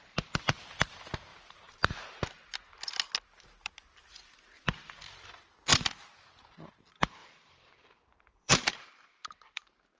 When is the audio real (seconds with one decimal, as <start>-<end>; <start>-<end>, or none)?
0.0-1.3; 2.2-7.2; 8.9-10.0